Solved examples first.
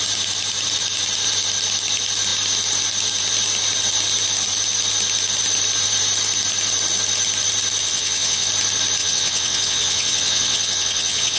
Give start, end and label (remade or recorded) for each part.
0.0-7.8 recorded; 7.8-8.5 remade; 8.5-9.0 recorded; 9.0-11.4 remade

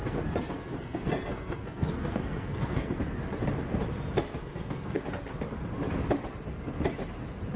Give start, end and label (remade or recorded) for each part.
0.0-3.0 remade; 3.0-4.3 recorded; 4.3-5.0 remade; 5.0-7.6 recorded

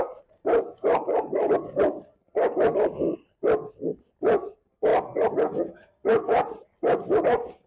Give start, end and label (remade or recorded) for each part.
0.0-4.9 remade; 4.9-5.6 recorded; 5.6-7.7 remade

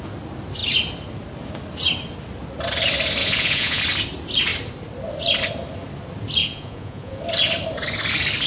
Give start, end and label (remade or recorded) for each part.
0.0-3.2 recorded; 3.2-3.8 remade; 3.8-6.4 recorded; 6.4-7.2 remade; 7.2-8.5 recorded

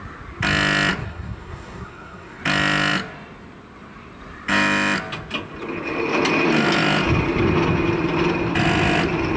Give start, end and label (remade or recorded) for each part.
0.0-1.0 recorded; 1.0-2.4 remade; 2.4-9.4 recorded